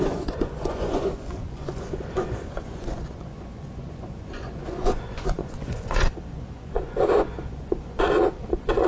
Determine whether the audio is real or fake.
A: fake